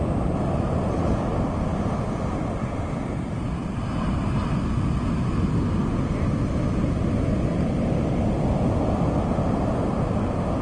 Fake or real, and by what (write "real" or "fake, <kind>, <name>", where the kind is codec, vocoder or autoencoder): real